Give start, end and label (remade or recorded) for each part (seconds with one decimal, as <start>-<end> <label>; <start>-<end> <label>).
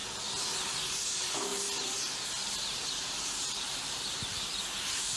0.0-0.9 recorded; 0.9-1.5 remade; 1.5-2.5 recorded; 2.5-5.2 remade